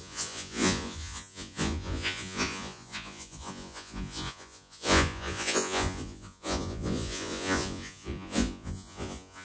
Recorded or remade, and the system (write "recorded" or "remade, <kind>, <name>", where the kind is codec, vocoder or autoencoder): remade, vocoder, Vocos